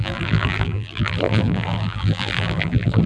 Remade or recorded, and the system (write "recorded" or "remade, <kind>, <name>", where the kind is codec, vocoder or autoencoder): remade, vocoder, BigVGAN v2